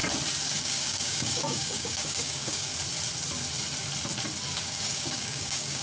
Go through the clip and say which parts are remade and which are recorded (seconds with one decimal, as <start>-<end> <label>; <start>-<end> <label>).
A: 0.0-0.6 recorded; 0.6-2.7 remade; 2.7-4.6 recorded; 4.6-5.8 remade